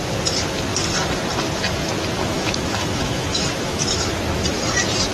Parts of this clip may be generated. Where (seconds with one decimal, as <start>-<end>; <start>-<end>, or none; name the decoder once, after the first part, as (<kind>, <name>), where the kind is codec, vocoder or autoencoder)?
2.2-4.0 (autoencoder, DAC-VAE)